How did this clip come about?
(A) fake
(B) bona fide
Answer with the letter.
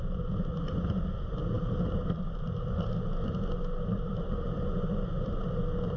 A